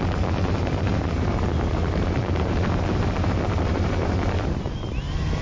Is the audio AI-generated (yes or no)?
yes